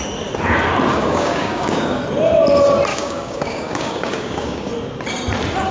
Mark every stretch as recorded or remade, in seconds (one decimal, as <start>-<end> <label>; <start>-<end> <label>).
0.0-0.9 recorded; 0.9-2.0 remade; 2.0-2.9 recorded; 2.9-4.7 remade; 4.7-5.7 recorded